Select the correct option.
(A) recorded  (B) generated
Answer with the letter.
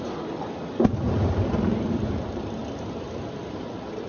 A